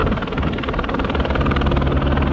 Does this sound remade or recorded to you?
recorded